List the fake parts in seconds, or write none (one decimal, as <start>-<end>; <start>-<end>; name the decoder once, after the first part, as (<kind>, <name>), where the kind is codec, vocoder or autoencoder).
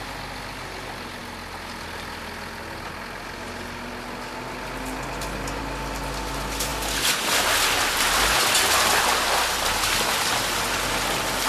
none